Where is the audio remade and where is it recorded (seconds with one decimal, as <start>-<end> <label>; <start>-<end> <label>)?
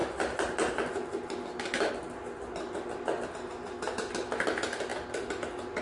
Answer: 0.0-5.8 recorded